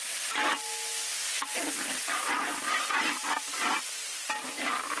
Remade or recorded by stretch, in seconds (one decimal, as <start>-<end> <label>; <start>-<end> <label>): 0.0-5.0 recorded